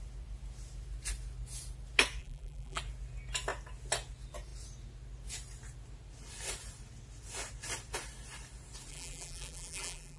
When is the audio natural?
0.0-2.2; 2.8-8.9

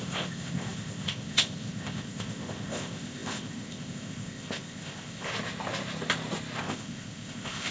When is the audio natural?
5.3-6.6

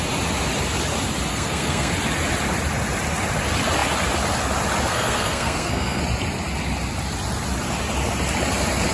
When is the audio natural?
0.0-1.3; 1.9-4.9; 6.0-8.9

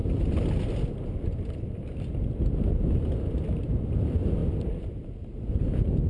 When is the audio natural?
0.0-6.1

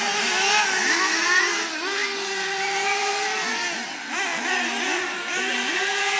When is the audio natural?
0.0-6.2